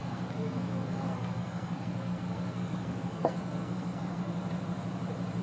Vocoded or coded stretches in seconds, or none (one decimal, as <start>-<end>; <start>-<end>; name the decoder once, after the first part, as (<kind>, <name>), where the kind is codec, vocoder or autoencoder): 0.0-4.3 (codec, SNAC)